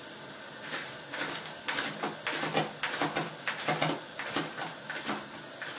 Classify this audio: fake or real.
real